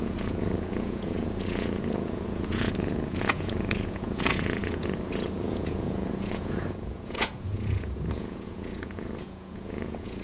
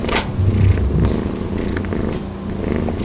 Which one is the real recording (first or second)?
second